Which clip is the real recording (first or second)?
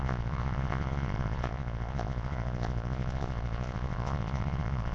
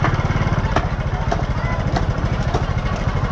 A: second